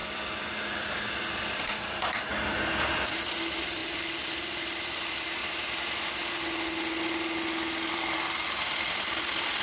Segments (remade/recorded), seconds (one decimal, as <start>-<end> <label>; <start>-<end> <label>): 0.0-2.3 remade; 2.3-3.1 recorded; 3.1-5.4 remade; 5.4-7.9 recorded; 7.9-9.6 remade